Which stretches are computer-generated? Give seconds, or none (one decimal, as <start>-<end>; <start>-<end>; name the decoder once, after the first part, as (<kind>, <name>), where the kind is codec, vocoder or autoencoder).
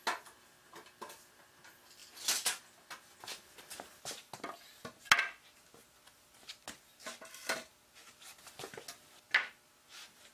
none